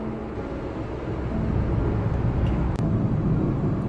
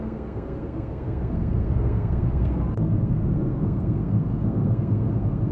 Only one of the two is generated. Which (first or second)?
second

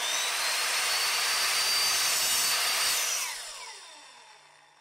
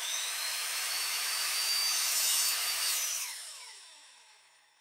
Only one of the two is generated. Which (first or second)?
second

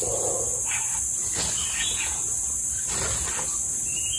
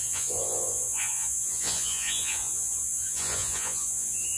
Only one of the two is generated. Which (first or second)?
second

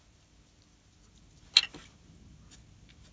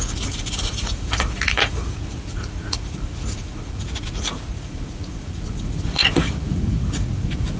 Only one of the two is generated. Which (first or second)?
second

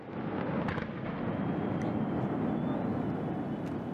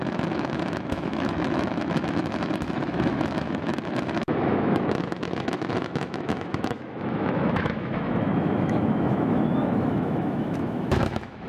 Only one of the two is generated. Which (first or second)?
second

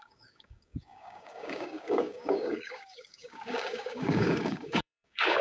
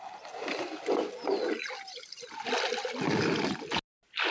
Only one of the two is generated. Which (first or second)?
first